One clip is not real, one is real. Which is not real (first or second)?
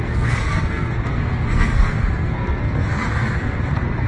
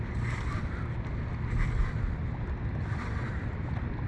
first